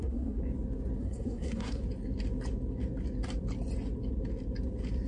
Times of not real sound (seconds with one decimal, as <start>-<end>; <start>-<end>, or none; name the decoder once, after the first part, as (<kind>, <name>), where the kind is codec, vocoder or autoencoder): 0.0-0.4 (codec, SNAC); 1.0-1.8